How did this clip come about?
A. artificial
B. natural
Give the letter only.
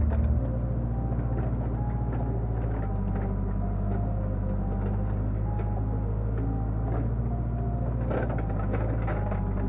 B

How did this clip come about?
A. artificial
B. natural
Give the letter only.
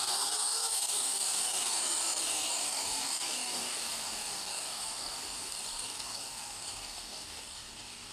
A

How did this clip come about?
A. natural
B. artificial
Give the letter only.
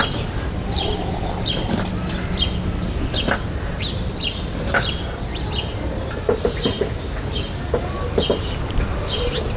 A